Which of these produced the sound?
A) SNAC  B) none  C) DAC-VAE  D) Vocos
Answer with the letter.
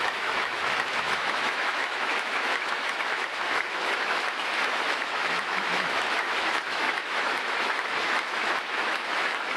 C